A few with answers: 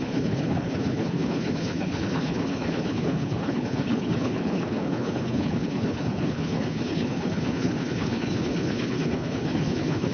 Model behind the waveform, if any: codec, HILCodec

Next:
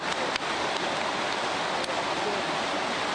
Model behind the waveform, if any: none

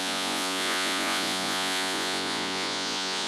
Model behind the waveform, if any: vocoder, Vocos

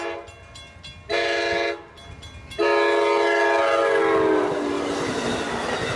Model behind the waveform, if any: none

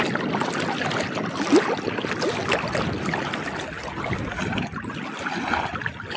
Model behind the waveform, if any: none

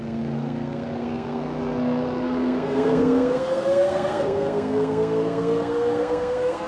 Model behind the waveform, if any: codec, SNAC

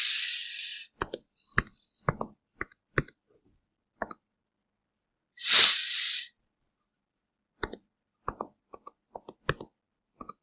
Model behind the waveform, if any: none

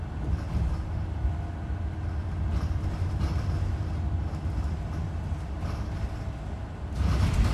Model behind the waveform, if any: none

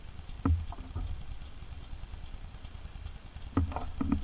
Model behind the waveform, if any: none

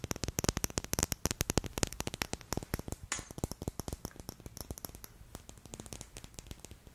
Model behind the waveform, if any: none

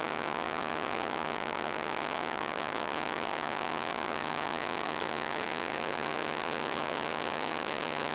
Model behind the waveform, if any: vocoder, HiFi-GAN